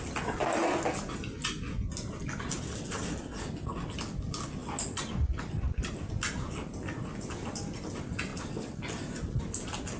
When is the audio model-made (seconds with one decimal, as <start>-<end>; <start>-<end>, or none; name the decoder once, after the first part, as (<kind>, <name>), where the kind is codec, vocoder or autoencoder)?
none